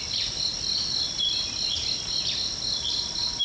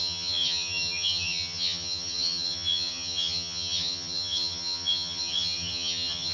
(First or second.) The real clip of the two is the first